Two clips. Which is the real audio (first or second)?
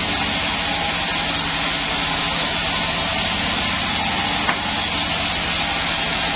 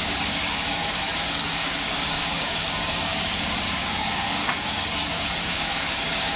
first